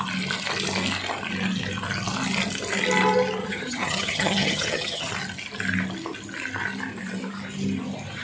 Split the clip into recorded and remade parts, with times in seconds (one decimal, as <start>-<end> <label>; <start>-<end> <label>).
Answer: 0.0-3.4 recorded; 3.4-5.1 remade; 5.1-8.2 recorded